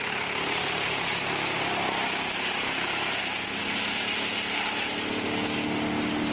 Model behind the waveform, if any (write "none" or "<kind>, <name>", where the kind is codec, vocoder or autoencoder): none